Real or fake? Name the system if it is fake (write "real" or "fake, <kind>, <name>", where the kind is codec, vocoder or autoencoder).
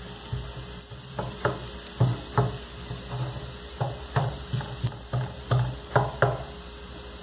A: real